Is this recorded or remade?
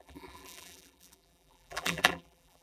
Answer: remade